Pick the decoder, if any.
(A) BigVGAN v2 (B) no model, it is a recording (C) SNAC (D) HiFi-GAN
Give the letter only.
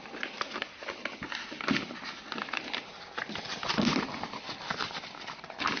B